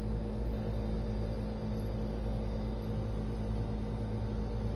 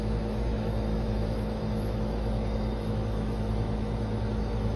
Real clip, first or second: first